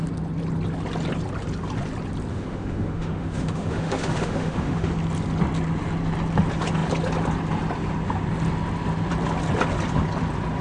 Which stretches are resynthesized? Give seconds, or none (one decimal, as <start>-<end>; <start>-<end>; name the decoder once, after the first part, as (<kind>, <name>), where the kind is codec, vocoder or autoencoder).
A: 2.3-4.9 (autoencoder, DAC-VAE)